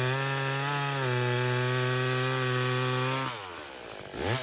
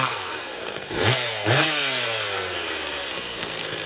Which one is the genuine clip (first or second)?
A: first